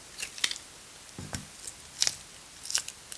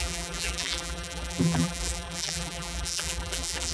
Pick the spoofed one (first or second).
second